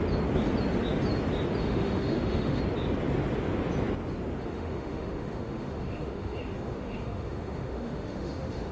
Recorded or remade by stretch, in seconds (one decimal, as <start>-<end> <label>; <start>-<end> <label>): 0.0-1.6 recorded; 1.6-2.6 remade; 2.6-4.4 recorded; 4.4-8.7 remade